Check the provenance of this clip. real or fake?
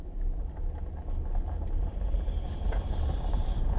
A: real